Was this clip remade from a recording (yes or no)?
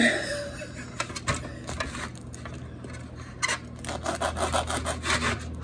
no